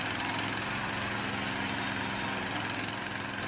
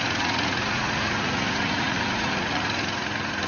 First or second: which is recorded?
first